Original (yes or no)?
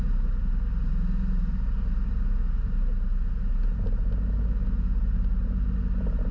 yes